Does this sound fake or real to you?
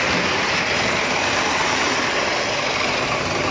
real